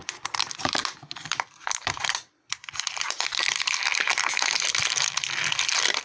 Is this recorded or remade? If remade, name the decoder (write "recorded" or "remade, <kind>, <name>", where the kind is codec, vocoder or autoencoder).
remade, vocoder, BigVGAN v2